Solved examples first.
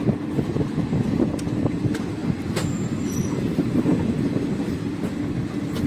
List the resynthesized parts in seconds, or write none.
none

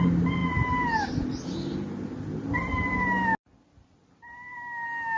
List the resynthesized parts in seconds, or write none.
none